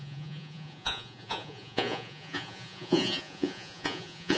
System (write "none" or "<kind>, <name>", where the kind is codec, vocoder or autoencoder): vocoder, Vocos